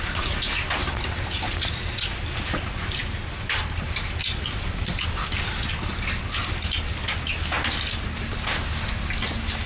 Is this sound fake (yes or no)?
no